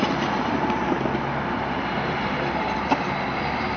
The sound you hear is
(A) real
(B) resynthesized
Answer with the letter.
B